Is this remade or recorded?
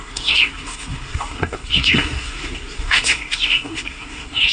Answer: remade